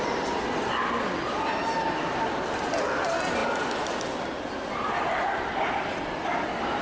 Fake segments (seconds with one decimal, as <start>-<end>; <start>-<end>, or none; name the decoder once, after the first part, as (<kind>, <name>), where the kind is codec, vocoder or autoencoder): none